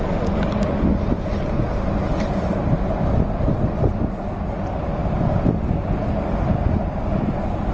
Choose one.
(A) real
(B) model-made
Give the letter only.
A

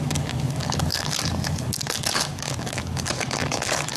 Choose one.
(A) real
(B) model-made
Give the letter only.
B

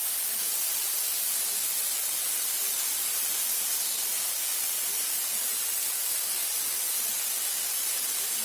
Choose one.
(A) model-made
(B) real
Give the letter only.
B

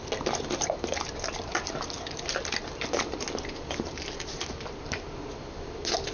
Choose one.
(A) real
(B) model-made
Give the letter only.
A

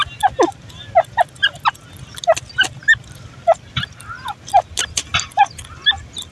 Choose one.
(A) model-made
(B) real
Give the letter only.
B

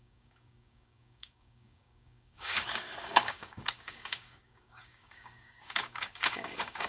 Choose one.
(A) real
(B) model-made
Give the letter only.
B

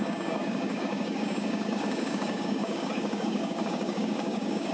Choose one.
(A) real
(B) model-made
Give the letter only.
B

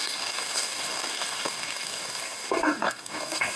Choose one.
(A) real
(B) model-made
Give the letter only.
B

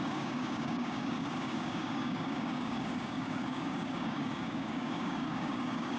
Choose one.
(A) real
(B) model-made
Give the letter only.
B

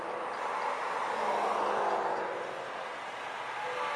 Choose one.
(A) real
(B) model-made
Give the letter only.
A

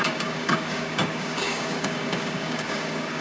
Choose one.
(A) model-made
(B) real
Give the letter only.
A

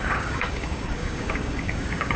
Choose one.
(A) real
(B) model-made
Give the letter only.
B